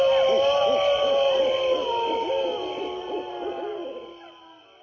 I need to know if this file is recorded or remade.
recorded